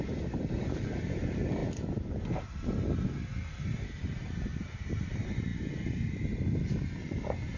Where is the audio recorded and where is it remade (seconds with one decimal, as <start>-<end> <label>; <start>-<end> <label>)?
0.0-1.6 remade; 1.6-4.0 recorded; 4.0-5.5 remade; 5.5-7.0 recorded; 7.0-7.6 remade